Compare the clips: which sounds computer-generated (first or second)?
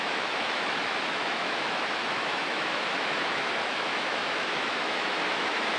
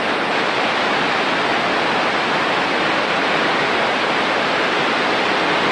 first